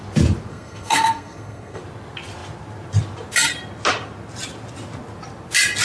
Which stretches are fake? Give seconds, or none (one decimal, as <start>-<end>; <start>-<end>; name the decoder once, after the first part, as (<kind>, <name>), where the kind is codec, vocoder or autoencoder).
0.5-1.8 (codec, SNAC)